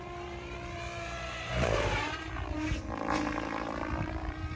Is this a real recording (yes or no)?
no